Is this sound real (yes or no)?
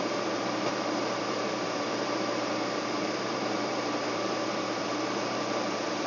no